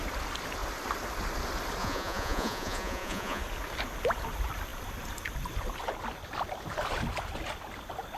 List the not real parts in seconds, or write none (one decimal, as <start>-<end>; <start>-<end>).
1.8-3.4